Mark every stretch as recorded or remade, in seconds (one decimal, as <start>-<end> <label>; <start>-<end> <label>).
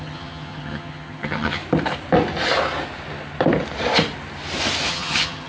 0.0-1.6 remade; 1.6-4.9 recorded; 4.9-5.5 remade